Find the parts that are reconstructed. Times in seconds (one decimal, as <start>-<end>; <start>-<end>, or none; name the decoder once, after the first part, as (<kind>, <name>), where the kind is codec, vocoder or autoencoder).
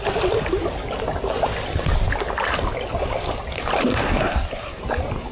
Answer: 3.9-4.8 (codec, SNAC)